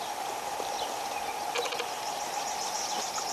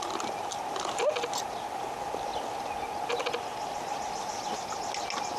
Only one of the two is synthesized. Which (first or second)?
first